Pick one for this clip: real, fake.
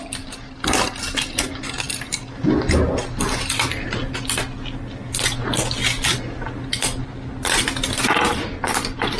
real